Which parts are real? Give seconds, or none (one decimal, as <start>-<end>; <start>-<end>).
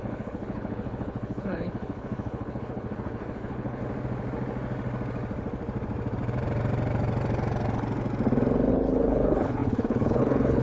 3.8-8.7